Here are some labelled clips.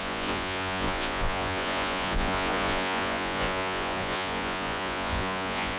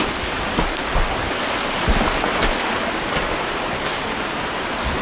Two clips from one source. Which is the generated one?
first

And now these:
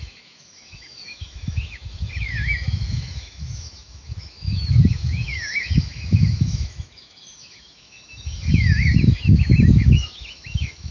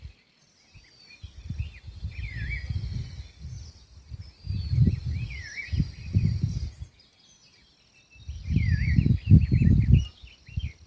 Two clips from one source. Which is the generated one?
first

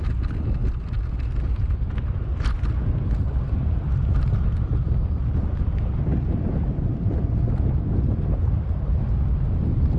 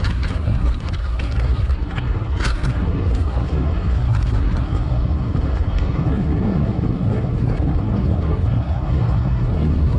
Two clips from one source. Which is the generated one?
second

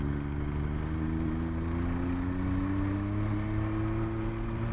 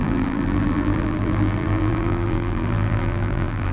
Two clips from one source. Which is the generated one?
second